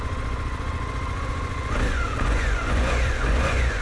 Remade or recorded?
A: remade